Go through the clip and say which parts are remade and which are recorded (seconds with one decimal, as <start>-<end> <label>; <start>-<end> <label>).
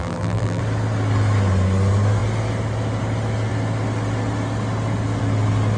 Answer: 0.0-0.6 remade; 0.6-5.8 recorded